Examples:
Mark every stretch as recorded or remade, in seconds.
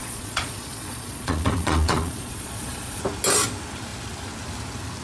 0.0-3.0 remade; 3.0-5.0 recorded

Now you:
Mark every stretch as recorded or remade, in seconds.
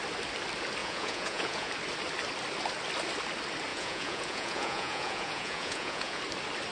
0.0-0.8 recorded; 0.8-1.7 remade; 1.7-3.7 recorded; 3.7-6.2 remade; 6.2-6.7 recorded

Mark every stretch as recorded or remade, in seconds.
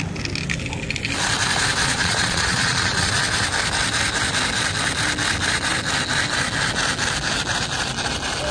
0.0-1.8 recorded; 1.8-3.1 remade; 3.1-8.5 recorded